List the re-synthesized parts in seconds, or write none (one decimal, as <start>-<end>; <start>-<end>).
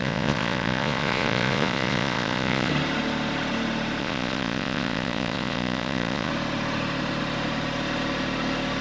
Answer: 0.0-2.7; 4.0-6.3